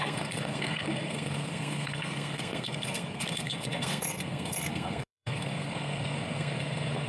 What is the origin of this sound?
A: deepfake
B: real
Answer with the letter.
A